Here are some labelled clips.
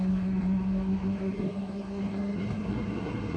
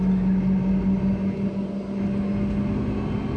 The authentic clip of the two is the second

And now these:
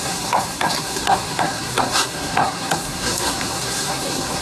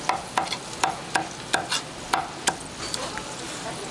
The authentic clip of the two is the second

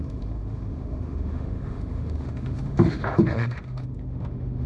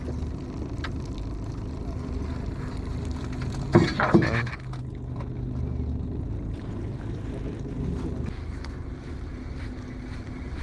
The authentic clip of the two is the second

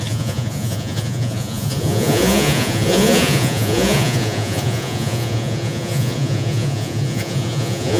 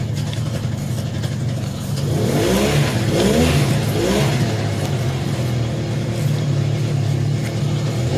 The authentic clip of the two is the second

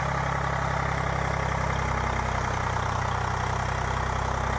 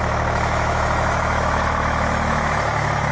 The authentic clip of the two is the first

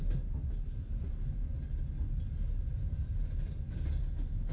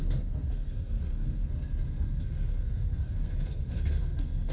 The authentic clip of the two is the first